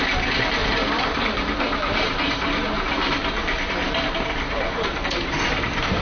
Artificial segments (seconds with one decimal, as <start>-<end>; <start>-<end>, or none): 0.0-3.2; 5.0-6.0